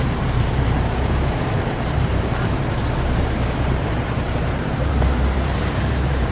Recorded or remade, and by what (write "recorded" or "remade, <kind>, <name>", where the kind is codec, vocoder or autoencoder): remade, vocoder, BigVGAN v2